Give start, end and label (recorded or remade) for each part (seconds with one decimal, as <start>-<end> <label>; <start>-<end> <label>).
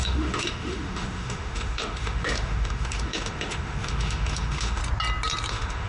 0.0-4.8 remade; 4.8-5.5 recorded; 5.5-5.9 remade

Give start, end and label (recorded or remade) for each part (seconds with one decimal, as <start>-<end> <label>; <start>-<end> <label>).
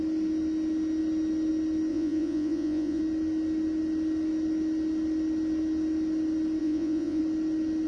0.0-1.9 recorded; 1.9-3.0 remade; 3.0-6.6 recorded; 6.6-7.2 remade; 7.2-7.9 recorded